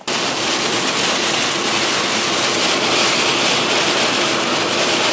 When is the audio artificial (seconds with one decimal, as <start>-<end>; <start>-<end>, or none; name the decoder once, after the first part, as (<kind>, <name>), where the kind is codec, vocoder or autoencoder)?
none

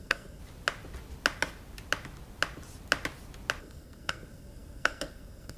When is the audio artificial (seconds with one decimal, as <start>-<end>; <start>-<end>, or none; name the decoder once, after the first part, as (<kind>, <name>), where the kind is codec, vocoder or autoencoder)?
0.0-0.4 (codec, SNAC); 3.6-5.6

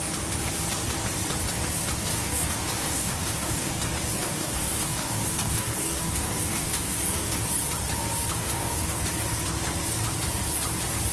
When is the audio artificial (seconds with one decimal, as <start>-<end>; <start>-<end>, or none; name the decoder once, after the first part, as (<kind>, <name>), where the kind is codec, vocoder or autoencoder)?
2.1-3.7 (codec, DAC); 4.2-7.4; 8.4-9.0

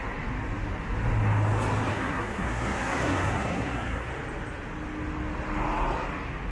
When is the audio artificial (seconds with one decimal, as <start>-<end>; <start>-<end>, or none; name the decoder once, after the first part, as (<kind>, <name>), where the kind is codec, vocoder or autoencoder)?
1.9-4.1 (codec, SNAC)

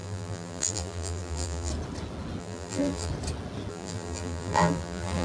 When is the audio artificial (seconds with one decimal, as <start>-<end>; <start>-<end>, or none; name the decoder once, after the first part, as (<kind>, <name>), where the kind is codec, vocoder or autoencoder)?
0.0-1.7 (vocoder, BigVGAN v2); 2.4-3.1; 3.7-5.2

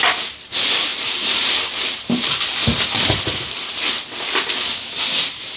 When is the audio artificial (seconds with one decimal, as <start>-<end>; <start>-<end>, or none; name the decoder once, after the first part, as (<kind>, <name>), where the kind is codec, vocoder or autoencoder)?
0.9-2.3 (vocoder, BigVGAN v2)

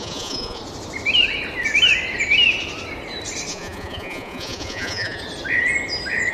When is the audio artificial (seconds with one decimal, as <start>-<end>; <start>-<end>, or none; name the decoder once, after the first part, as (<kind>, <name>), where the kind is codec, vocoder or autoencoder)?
0.0-0.6 (vocoder, Vocos); 3.5-5.2